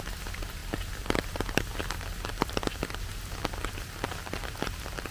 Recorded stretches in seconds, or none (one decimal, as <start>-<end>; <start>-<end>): 0.0-5.1